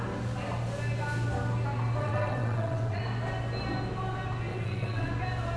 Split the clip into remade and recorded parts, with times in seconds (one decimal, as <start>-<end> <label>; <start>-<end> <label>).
0.0-2.0 recorded; 2.0-3.0 remade; 3.0-4.5 recorded; 4.5-5.1 remade; 5.1-5.6 recorded